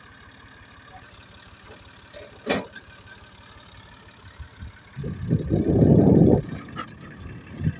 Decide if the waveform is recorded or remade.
recorded